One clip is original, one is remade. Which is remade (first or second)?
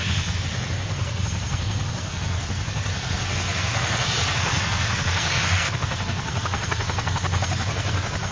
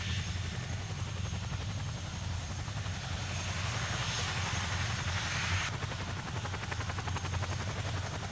first